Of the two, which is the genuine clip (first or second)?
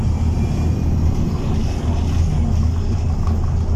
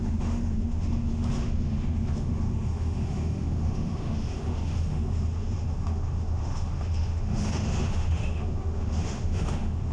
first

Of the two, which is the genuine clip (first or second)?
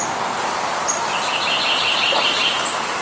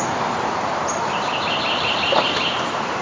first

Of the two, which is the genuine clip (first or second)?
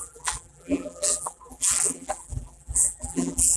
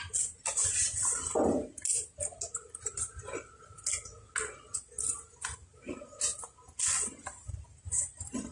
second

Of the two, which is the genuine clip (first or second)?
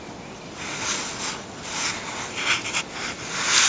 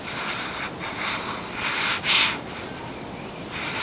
first